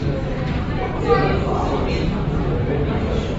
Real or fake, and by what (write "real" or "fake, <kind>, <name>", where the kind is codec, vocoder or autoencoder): fake, vocoder, BigVGAN v2